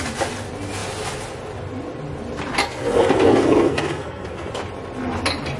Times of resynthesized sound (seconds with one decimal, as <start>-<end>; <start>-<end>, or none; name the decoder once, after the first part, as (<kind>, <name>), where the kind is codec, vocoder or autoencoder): 2.6-4.5 (codec, SNAC)